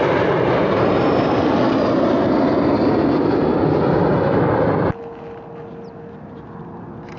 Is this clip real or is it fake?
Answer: real